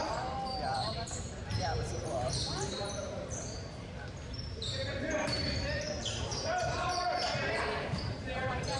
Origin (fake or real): fake